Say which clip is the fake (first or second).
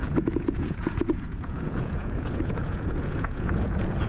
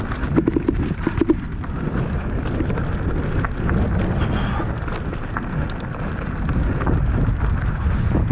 first